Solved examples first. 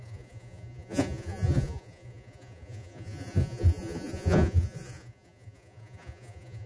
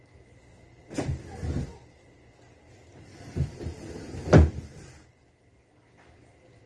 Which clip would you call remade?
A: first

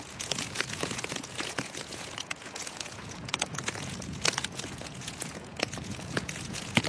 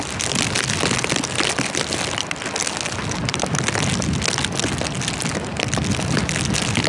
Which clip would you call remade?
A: first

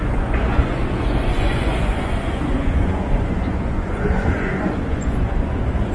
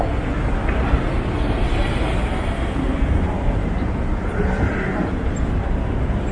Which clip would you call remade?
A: first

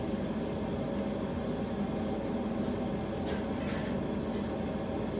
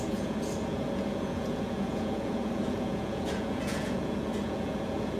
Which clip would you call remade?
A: second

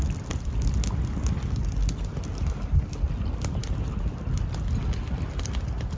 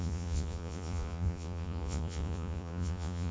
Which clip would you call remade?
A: second